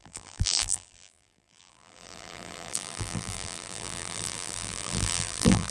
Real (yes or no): no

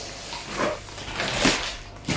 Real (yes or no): yes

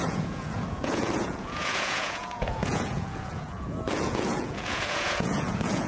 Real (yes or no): no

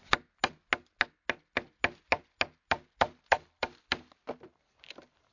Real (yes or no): yes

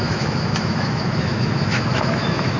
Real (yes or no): no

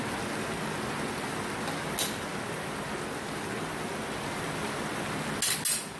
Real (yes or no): yes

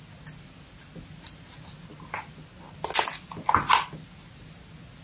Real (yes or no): yes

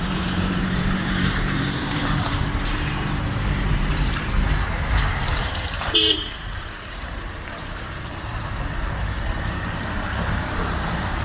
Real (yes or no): no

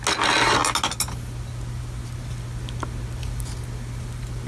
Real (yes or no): yes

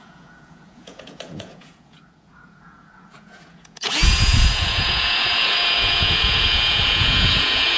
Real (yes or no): no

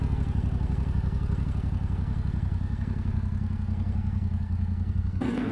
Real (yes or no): no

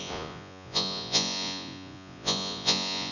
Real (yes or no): no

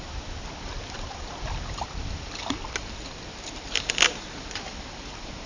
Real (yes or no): yes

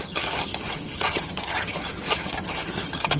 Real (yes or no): no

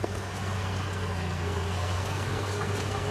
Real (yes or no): no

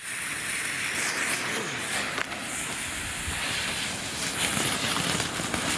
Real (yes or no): yes